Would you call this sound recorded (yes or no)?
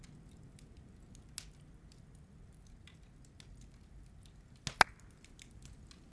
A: yes